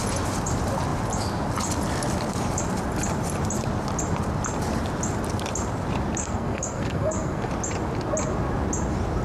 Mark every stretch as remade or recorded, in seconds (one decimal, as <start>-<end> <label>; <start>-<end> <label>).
0.0-6.2 recorded; 6.2-7.5 remade; 7.5-9.2 recorded